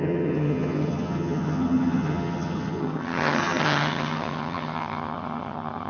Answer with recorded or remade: remade